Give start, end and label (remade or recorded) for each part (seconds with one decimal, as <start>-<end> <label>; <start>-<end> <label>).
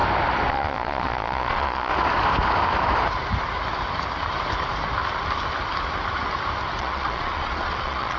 0.0-0.5 recorded; 0.5-1.9 remade; 1.9-6.8 recorded; 6.8-8.2 remade